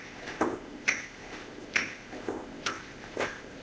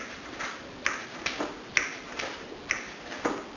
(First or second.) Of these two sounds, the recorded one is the second